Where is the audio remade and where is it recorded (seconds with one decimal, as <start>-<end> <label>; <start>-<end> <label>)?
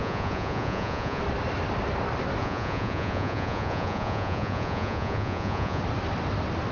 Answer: 0.0-1.2 remade; 1.2-2.4 recorded; 2.4-5.8 remade; 5.8-6.7 recorded